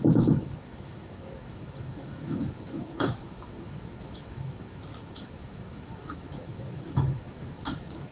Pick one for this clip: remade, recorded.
remade